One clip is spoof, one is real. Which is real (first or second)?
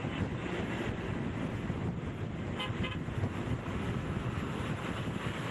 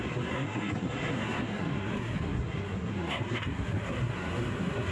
first